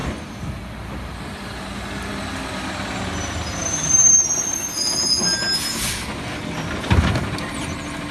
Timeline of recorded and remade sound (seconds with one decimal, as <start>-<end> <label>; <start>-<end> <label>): 0.0-2.1 remade; 2.1-8.1 recorded